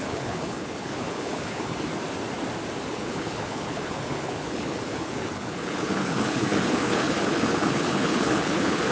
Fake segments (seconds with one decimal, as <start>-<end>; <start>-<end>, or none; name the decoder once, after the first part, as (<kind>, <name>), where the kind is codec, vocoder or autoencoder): 0.0-1.9 (codec, HILCodec); 2.9-8.9